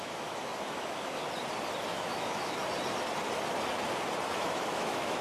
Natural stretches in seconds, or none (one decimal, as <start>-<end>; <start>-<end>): 1.2-1.8; 2.6-4.3